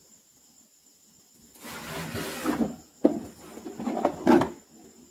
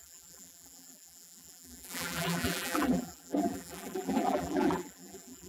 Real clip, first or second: first